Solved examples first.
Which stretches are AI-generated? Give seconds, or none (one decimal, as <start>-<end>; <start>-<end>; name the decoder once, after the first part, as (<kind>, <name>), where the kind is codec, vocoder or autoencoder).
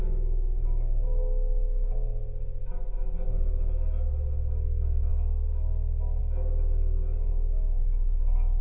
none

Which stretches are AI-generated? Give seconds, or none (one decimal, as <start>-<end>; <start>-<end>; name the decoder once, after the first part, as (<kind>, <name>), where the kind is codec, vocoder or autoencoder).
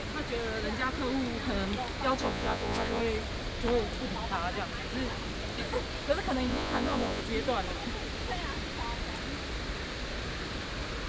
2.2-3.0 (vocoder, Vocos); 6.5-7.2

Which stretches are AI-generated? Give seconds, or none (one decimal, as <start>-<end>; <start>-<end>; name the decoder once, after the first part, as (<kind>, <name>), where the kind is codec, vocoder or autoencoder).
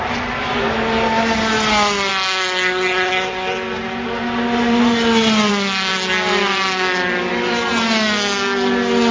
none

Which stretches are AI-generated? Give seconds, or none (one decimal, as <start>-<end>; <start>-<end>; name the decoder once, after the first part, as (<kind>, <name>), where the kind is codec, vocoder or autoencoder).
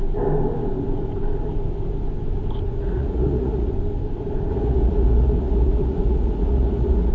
2.8-3.7 (vocoder, Vocos); 4.5-7.1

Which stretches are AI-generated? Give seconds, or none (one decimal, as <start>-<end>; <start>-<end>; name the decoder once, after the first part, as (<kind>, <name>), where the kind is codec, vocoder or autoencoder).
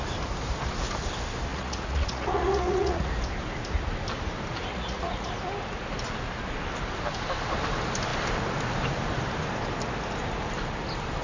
1.5-3.1 (vocoder, Vocos); 4.7-5.3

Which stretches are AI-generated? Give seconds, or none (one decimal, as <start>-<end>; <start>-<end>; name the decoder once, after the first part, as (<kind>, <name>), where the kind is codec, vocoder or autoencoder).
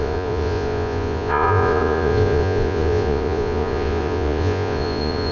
0.0-5.3 (vocoder, Vocos)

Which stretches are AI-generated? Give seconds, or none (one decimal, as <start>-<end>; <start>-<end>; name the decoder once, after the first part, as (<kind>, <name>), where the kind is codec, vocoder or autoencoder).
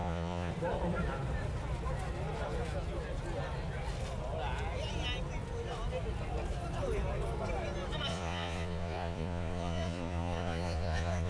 0.0-0.5 (vocoder, Vocos); 8.1-11.3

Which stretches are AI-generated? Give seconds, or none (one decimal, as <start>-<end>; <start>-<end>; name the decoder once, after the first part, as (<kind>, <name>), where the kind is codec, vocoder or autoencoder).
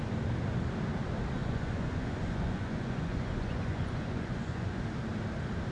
1.4-4.8 (vocoder, Vocos)